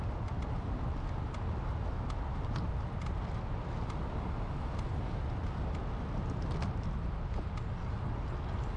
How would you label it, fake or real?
real